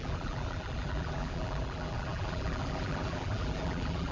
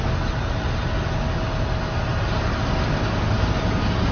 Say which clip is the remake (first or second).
first